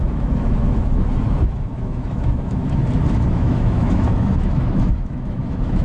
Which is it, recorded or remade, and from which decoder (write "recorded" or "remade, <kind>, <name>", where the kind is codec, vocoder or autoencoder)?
remade, autoencoder, DAC-VAE